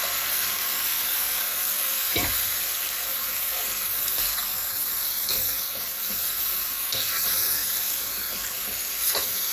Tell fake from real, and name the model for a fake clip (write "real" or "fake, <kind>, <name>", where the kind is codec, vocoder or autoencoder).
fake, codec, SNAC